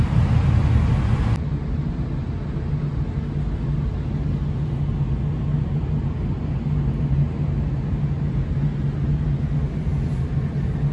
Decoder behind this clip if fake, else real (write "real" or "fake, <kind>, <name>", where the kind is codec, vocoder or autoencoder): real